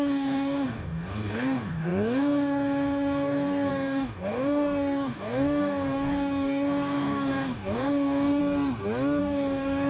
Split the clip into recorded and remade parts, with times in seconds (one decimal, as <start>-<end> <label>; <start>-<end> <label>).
0.0-8.4 remade; 8.4-9.2 recorded; 9.2-9.9 remade

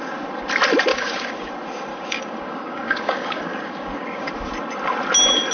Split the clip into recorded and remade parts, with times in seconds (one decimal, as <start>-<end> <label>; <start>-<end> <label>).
0.0-0.9 recorded; 0.9-1.5 remade; 1.5-1.9 recorded; 1.9-4.3 remade; 4.3-5.5 recorded

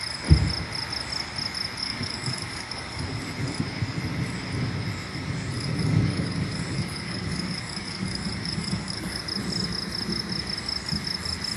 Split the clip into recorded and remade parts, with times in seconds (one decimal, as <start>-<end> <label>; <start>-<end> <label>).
0.0-1.8 recorded; 1.8-3.2 remade; 3.2-5.1 recorded; 5.1-9.2 remade; 9.2-11.6 recorded

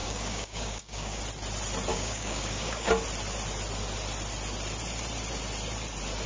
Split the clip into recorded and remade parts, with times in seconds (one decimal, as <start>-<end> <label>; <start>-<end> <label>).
0.0-1.2 remade; 1.2-1.9 recorded; 1.9-2.9 remade; 2.9-6.3 recorded

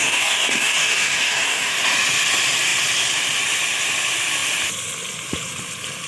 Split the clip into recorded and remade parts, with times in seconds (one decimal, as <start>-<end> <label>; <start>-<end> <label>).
0.0-1.7 remade; 1.7-6.1 recorded

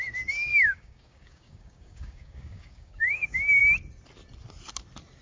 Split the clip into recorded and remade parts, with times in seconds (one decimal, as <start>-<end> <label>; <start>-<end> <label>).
0.0-0.5 recorded; 0.5-3.6 remade; 3.6-5.2 recorded

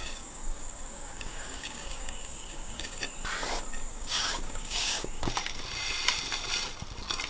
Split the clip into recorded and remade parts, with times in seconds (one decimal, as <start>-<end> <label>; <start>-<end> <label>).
0.0-3.0 remade; 3.0-3.9 recorded; 3.9-5.3 remade; 5.3-7.3 recorded